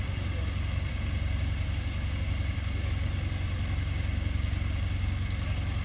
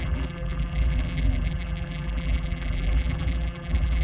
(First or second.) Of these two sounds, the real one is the first